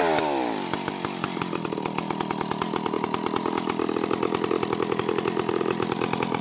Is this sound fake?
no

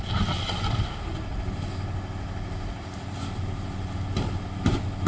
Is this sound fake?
no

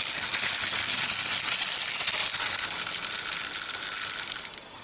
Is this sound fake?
no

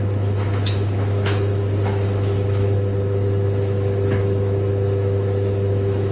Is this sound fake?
yes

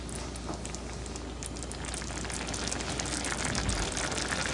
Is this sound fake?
no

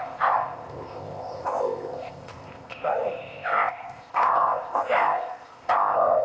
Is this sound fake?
yes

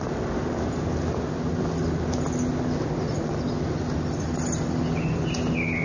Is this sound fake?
no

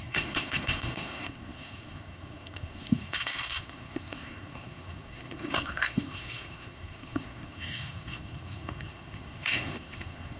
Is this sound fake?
yes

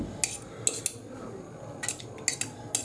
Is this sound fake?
no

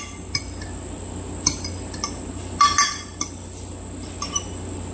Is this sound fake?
no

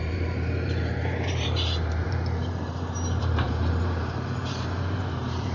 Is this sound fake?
yes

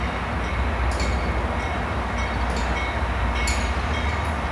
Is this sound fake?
no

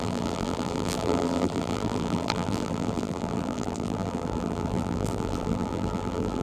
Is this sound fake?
yes